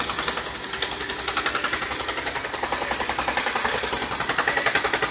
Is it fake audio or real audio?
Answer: real